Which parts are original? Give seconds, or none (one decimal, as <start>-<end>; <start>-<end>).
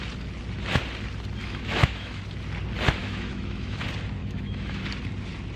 0.0-1.4; 2.2-3.0; 3.8-4.2; 4.8-5.6